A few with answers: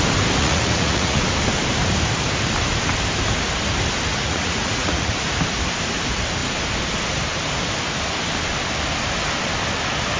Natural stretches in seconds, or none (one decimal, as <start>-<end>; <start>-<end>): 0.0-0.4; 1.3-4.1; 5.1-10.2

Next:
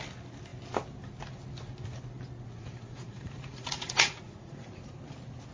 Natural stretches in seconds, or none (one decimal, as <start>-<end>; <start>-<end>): 0.0-2.5; 4.8-5.5

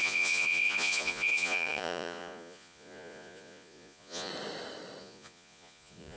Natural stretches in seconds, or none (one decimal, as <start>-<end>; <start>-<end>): 4.3-5.0

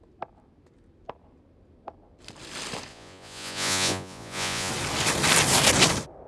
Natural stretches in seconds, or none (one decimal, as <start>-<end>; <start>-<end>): 0.0-2.9; 4.7-6.3

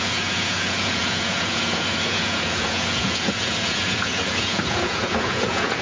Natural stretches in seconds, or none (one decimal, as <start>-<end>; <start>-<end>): none

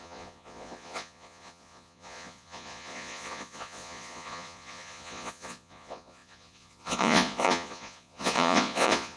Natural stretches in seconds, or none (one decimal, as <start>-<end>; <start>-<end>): none

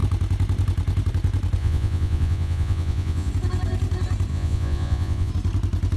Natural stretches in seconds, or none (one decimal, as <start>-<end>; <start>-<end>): 0.0-1.6; 3.3-4.3; 5.3-6.0